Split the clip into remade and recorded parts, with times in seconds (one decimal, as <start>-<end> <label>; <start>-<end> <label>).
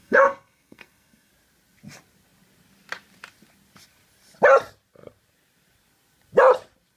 0.0-1.3 remade; 1.3-7.0 recorded